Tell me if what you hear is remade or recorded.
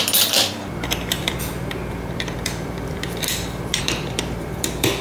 remade